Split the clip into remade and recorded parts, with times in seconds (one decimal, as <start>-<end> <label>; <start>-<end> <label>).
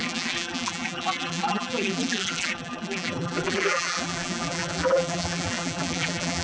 0.0-6.4 remade